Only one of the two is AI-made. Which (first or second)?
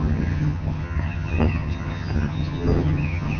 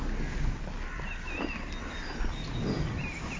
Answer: first